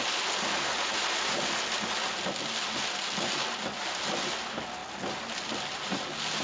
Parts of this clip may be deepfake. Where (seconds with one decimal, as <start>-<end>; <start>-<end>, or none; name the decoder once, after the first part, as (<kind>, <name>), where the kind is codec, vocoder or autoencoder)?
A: none